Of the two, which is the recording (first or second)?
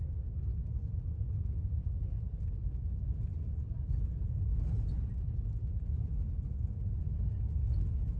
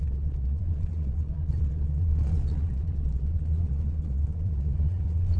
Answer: first